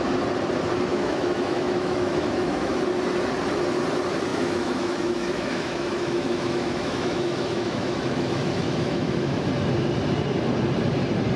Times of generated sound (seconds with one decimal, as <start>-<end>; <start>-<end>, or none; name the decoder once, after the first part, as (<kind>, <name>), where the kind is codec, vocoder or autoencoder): 0.9-2.8 (autoencoder, DAC-VAE); 4.3-9.5